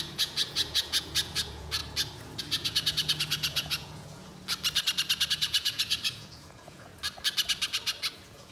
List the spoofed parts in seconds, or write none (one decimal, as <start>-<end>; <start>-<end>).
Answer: 0.0-1.8; 2.4-4.3; 5.3-6.9; 8.1-8.5